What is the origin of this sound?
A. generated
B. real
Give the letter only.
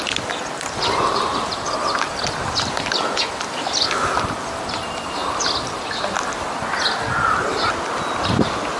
B